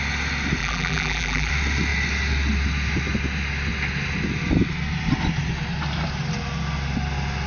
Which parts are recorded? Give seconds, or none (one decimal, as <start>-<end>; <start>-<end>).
0.0-0.6; 1.5-7.5

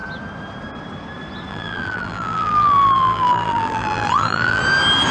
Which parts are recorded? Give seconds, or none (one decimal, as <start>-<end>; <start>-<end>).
0.0-1.5; 4.6-5.1

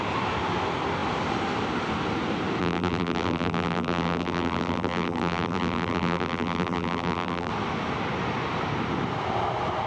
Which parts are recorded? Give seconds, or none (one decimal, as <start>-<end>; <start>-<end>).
0.0-2.6; 7.5-9.9